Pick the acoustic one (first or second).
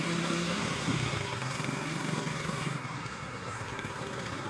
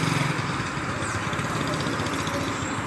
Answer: second